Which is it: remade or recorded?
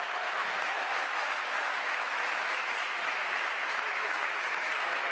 remade